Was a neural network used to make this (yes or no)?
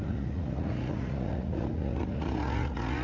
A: yes